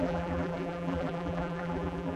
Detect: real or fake fake